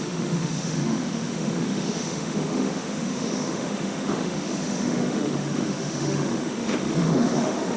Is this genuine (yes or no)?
no